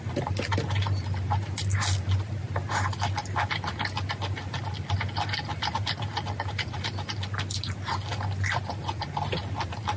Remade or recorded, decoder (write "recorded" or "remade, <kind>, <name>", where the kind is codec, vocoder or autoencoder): recorded